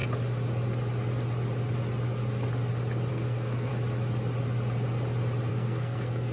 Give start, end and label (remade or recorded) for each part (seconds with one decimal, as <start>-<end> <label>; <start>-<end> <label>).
0.0-3.1 recorded; 3.1-3.7 remade; 3.7-5.5 recorded; 5.5-6.3 remade